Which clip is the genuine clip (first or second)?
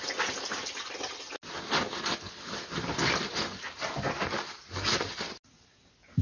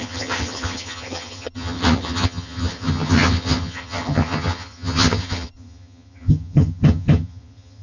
first